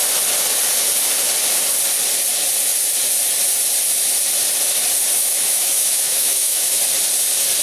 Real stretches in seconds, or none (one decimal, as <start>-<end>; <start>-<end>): 0.0-5.2; 6.8-7.6